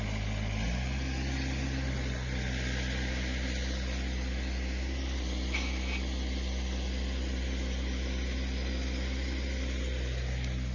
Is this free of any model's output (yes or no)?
yes